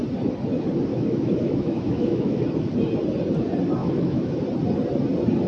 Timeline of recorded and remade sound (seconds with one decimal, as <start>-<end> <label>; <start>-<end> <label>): 0.0-0.9 recorded; 0.9-2.4 remade; 2.4-3.8 recorded; 3.8-4.4 remade; 4.4-5.5 recorded